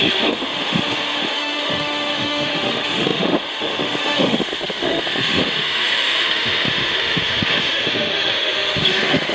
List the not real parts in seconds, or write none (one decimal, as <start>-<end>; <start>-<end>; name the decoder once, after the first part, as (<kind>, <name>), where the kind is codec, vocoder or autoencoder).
0.0-9.3 (autoencoder, DAC-VAE)